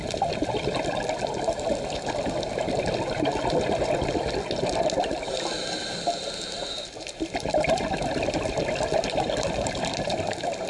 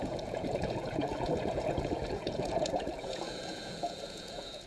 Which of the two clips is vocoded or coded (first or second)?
second